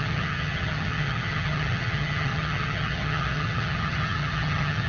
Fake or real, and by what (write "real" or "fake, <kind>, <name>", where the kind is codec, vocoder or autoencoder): fake, vocoder, HiFi-GAN